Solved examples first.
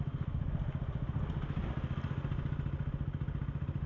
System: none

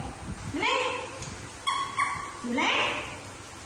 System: none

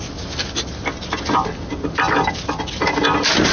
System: none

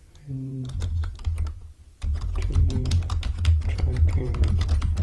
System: vocoder, BigVGAN v2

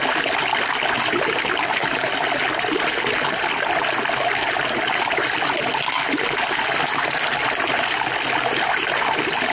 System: none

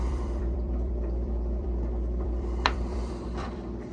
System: vocoder, BigVGAN v2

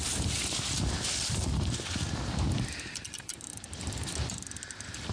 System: none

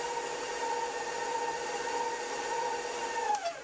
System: vocoder, BigVGAN v2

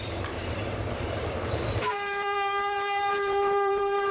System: vocoder, BigVGAN v2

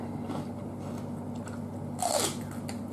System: none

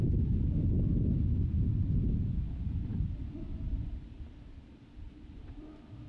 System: none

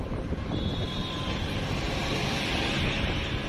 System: none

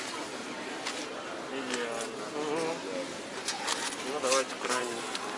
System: none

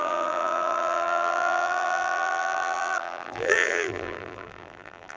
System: vocoder, BigVGAN v2